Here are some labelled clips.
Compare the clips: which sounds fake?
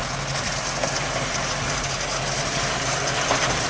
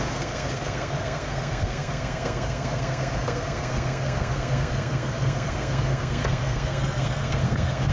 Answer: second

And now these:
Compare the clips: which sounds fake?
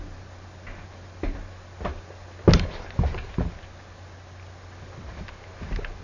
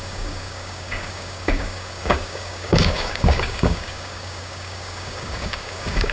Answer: second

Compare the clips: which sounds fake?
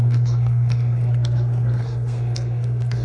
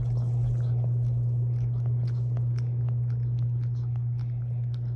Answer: first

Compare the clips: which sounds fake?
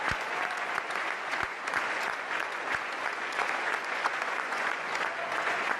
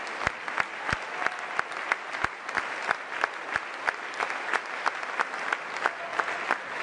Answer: first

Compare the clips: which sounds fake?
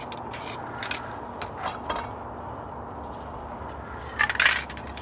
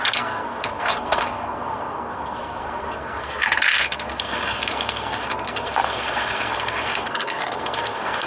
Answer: second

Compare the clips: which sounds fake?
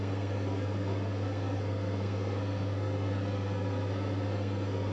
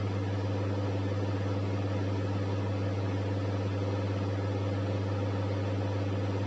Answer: first